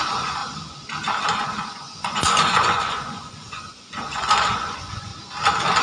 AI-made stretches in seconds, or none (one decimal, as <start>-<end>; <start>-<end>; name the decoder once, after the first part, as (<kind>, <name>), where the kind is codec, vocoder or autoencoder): 0.0-0.4 (vocoder, Vocos); 1.4-5.1